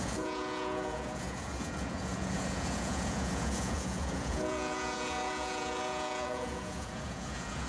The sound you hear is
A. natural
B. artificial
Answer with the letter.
B